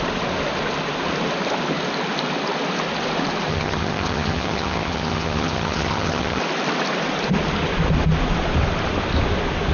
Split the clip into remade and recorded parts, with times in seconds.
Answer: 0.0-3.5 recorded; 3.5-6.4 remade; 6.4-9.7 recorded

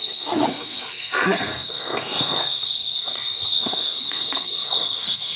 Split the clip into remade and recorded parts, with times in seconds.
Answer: 0.0-5.4 remade

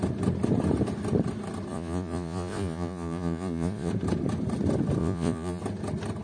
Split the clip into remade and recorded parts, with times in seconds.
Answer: 0.0-1.7 recorded; 1.7-3.9 remade; 3.9-5.0 recorded; 5.0-5.6 remade; 5.6-6.2 recorded

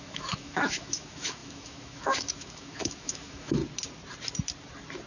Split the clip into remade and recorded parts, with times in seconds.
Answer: 0.0-3.6 remade; 3.6-5.1 recorded

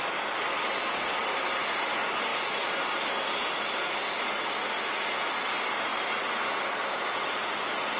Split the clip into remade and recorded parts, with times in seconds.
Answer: 0.0-1.2 recorded; 1.2-1.8 remade; 1.8-2.3 recorded; 2.3-3.3 remade; 3.3-8.0 recorded

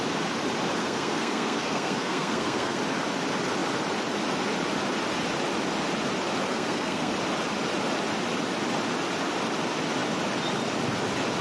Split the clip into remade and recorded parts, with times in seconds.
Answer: 0.0-0.8 recorded; 0.8-2.8 remade; 2.8-6.5 recorded; 6.5-7.1 remade; 7.1-11.4 recorded